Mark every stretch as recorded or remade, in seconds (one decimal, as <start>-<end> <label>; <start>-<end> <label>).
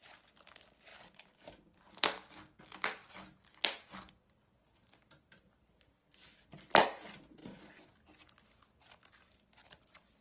0.0-10.2 recorded